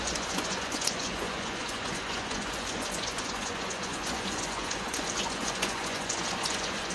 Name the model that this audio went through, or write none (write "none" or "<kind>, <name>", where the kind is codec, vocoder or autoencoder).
vocoder, Vocos